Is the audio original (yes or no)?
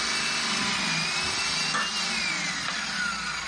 yes